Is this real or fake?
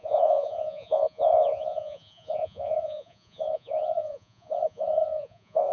fake